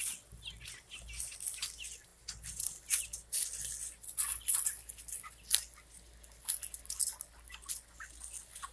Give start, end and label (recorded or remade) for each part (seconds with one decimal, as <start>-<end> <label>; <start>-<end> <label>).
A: 0.0-8.7 recorded